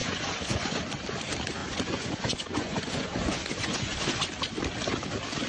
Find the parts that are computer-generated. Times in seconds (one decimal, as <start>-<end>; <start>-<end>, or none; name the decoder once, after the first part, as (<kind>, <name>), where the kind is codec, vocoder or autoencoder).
0.0-0.8 (vocoder, Vocos); 1.6-4.3